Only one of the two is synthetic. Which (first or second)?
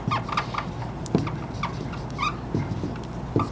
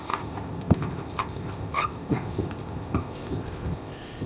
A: second